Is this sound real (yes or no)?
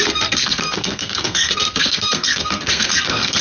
no